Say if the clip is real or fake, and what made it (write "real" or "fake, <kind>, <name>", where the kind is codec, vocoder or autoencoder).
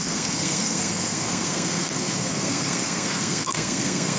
fake, codec, SNAC